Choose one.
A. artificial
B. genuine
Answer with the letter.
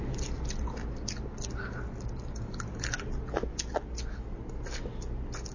B